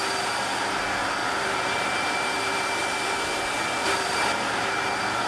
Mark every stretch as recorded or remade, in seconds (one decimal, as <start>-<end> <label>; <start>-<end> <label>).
0.0-1.2 recorded; 1.2-3.4 remade; 3.4-3.8 recorded; 3.8-4.7 remade; 4.7-5.3 recorded